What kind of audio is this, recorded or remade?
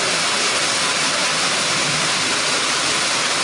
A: recorded